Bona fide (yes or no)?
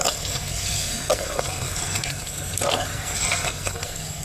no